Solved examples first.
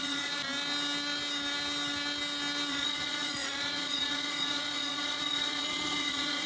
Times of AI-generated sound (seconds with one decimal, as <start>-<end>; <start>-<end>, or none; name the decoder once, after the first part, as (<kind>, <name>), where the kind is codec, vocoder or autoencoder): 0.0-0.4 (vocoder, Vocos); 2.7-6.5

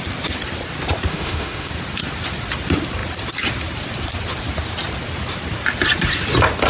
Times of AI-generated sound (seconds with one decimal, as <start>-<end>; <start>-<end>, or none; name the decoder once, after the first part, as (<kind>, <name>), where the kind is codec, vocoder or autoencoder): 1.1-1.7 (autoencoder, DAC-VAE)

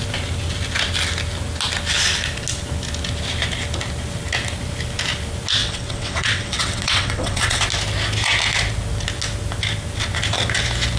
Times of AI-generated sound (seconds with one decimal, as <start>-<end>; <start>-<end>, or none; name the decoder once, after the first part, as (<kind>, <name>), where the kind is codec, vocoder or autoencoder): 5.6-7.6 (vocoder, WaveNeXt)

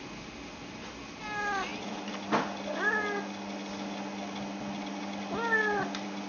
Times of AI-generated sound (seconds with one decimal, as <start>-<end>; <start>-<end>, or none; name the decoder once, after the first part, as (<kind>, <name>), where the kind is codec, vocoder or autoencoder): none

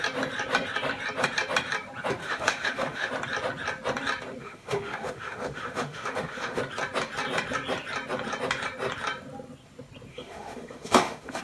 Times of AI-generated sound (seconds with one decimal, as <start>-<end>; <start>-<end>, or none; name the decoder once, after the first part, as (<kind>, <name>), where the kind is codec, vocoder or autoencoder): 2.2-3.1 (autoencoder, DAC-VAE); 4.4-6.6; 10.1-11.4

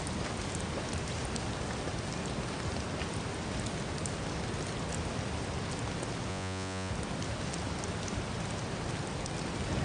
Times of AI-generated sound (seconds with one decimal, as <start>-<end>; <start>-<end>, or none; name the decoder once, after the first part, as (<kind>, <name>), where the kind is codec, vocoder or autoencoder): 6.3-6.9 (vocoder, Vocos)

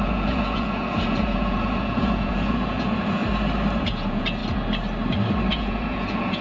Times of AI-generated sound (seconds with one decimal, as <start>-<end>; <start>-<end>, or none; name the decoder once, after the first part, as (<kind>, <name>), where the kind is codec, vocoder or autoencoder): 0.0-3.2 (vocoder, Vocos); 3.8-4.4; 5.5-6.4